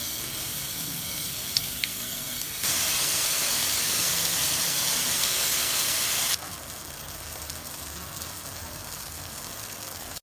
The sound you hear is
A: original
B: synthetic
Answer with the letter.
B